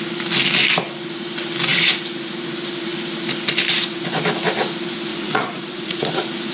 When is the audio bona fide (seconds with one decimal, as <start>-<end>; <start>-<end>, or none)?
0.0-5.1; 6.1-6.5